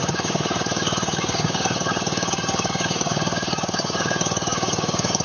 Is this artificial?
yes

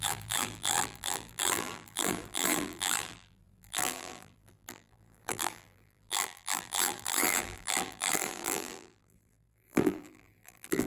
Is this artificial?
yes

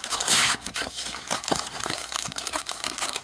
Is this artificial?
yes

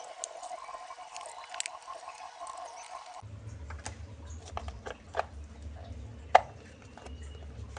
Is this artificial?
no